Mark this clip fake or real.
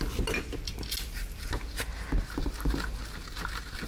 real